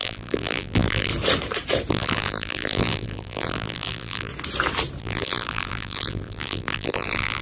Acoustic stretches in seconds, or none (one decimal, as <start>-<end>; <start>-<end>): 1.1-1.9; 4.3-5.0